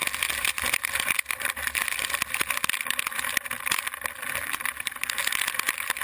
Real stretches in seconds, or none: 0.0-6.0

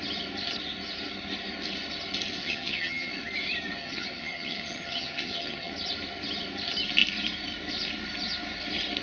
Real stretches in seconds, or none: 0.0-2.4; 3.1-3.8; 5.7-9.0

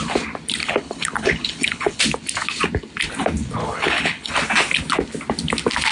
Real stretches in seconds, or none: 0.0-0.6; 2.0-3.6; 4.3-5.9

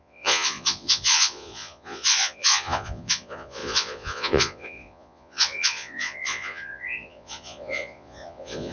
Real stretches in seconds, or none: none

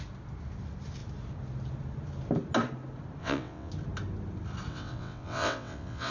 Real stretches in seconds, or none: 0.0-3.2; 3.7-4.7

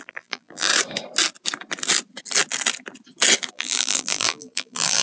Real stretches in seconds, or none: 0.7-3.5

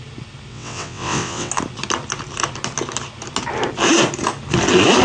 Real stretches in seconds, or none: 0.0-0.5; 1.5-5.0

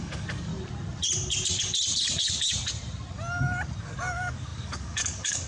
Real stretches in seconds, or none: 0.5-3.8